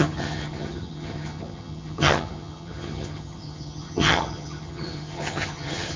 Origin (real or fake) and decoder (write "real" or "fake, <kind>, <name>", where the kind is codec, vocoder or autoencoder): fake, vocoder, HiFi-GAN